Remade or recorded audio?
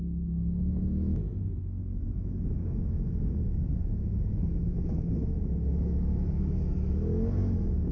remade